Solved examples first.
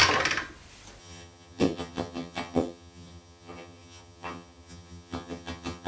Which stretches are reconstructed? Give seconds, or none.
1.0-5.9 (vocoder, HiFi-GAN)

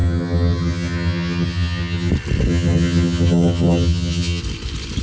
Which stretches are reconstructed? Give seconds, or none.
0.0-2.1 (vocoder, HiFi-GAN); 2.5-4.4

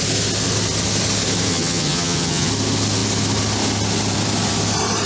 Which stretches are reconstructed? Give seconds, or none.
1.5-2.5 (vocoder, HiFi-GAN)

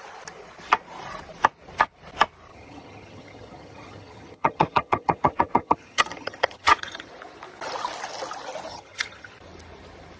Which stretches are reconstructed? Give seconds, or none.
2.5-7.1 (vocoder, HiFi-GAN); 8.7-9.3